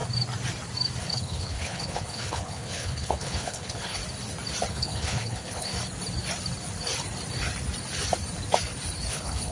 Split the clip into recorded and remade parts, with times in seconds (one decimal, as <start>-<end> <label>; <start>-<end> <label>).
0.0-1.0 recorded; 1.0-4.0 remade; 4.0-4.7 recorded; 4.7-5.7 remade; 5.7-9.1 recorded; 9.1-9.5 remade

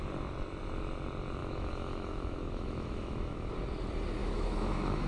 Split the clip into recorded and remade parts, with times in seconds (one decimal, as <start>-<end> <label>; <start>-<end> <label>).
0.0-1.4 recorded; 1.4-3.5 remade; 3.5-4.2 recorded; 4.2-5.1 remade

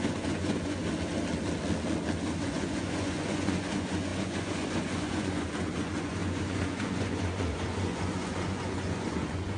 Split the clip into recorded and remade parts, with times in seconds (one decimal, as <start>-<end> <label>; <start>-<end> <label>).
0.0-0.8 remade; 0.8-2.4 recorded; 2.4-9.6 remade

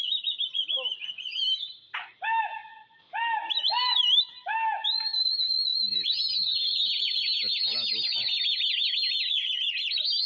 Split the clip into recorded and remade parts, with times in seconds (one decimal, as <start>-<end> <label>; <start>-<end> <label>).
0.0-10.3 recorded

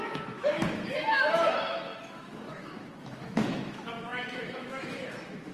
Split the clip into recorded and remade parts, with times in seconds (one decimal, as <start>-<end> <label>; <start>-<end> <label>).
0.0-5.5 remade

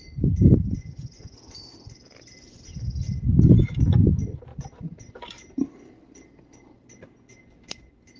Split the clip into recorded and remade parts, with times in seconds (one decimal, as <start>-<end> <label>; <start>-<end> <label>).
0.0-8.2 recorded